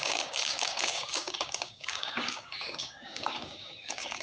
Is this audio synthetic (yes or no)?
yes